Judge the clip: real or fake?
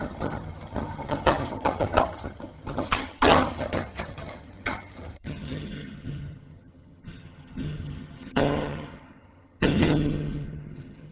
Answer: fake